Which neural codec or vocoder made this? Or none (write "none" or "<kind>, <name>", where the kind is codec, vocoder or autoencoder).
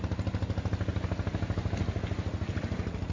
none